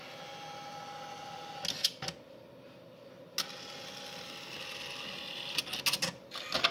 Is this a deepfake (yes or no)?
no